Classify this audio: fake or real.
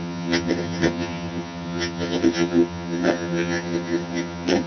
fake